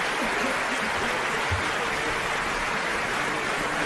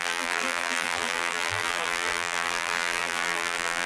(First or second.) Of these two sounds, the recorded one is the first